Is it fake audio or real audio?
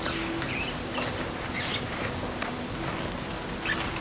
real